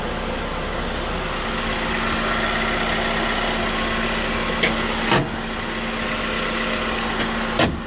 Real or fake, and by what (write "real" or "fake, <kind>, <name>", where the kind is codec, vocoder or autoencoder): real